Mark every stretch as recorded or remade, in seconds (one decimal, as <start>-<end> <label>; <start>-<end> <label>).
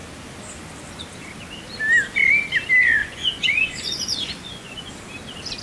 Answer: 0.0-3.0 recorded; 3.0-4.9 remade; 4.9-5.6 recorded